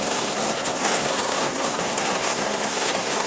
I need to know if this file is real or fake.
fake